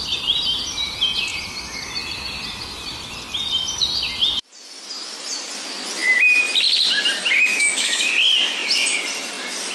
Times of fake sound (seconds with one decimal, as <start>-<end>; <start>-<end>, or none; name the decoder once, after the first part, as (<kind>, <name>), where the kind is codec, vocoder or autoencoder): 7.5-8.1 (autoencoder, DAC-VAE)